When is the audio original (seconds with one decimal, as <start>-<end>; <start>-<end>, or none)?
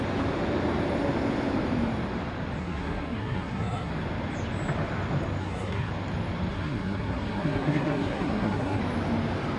0.0-2.6; 3.9-5.4; 5.9-6.5; 8.8-9.6